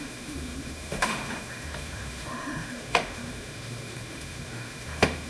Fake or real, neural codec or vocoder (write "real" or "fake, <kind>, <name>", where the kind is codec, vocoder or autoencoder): fake, autoencoder, DAC-VAE